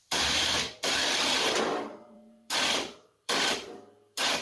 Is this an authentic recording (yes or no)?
no